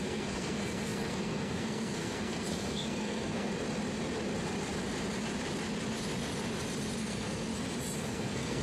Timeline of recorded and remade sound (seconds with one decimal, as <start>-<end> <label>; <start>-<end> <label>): 0.0-3.5 remade; 3.5-7.0 recorded; 7.0-7.5 remade; 7.5-8.0 recorded; 8.0-8.6 remade